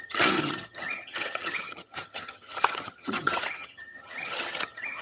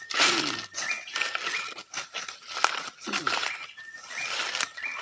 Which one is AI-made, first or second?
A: first